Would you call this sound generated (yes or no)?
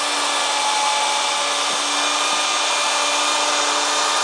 no